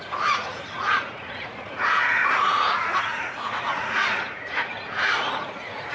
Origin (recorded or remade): remade